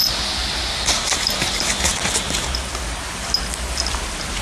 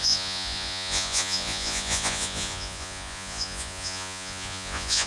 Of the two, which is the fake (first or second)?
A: second